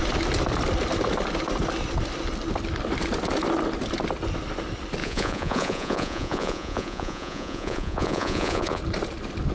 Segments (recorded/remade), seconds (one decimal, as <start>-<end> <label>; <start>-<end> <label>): 0.0-5.0 recorded; 5.0-8.8 remade; 8.8-9.5 recorded